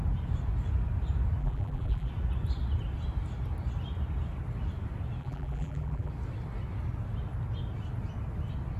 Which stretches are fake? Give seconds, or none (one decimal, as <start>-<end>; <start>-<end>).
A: 1.4-2.1; 5.2-6.1